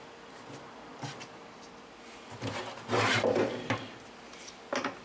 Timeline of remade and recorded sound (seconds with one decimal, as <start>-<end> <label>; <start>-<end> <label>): 0.0-5.0 recorded